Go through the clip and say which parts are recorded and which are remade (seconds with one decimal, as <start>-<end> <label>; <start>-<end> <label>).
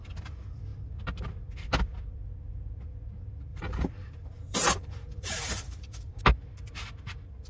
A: 0.0-3.5 recorded; 3.5-6.2 remade; 6.2-7.5 recorded